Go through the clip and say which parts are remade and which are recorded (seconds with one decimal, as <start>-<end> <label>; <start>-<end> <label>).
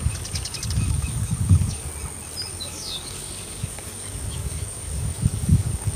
0.0-1.9 remade; 1.9-2.5 recorded; 2.5-6.0 remade